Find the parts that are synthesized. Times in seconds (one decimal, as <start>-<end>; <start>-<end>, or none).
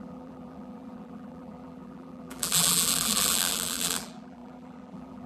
0.0-5.3